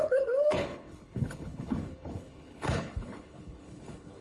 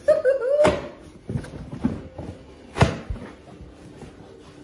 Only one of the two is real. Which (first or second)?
second